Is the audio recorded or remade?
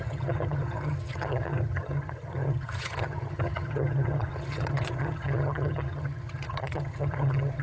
remade